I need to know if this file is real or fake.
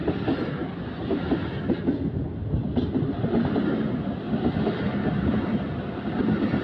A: real